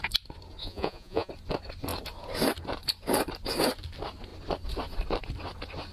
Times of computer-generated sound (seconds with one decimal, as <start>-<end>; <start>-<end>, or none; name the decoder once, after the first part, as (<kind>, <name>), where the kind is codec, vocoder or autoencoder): 0.6-1.3 (vocoder, Vocos)